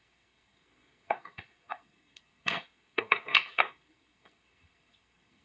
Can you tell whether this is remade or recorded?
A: remade